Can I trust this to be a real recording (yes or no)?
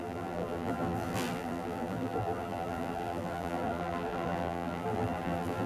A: no